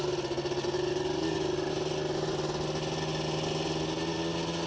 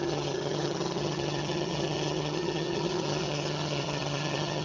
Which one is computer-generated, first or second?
second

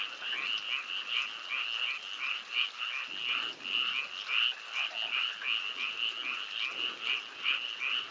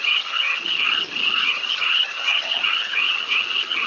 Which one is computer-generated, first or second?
second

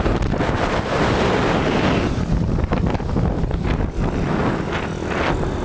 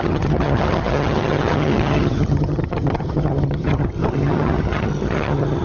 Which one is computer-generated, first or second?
second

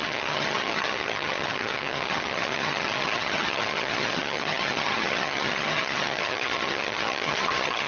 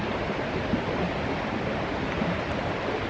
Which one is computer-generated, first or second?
first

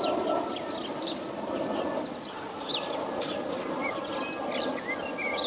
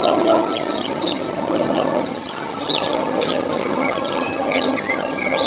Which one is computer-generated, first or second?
second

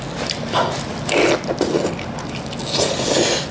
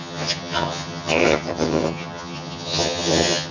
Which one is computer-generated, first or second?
second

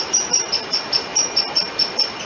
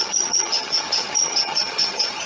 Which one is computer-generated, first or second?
second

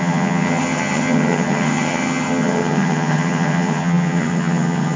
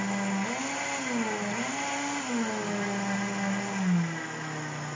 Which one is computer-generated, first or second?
first